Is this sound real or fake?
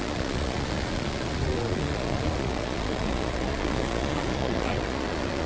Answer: fake